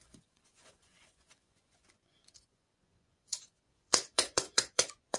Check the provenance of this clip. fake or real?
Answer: fake